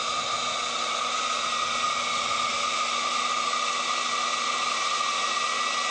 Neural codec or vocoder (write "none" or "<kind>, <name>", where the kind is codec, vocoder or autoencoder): none